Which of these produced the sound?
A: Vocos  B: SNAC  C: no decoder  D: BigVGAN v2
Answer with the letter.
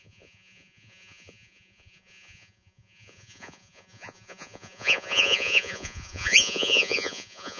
A